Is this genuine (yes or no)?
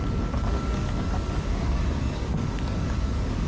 no